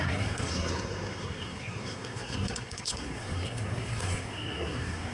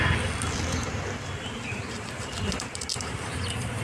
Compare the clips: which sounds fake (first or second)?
first